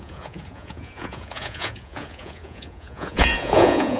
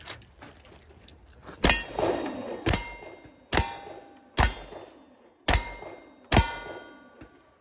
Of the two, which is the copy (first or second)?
first